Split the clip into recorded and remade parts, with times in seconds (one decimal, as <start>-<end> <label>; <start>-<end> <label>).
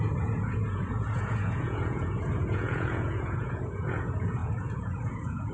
0.0-5.5 remade